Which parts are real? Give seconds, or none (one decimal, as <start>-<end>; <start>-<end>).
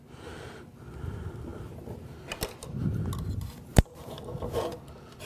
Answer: 0.0-5.3